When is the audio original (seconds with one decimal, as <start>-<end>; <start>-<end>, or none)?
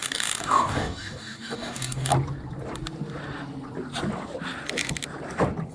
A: 2.1-5.7